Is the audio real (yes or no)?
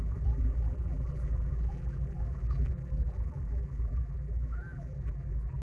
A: no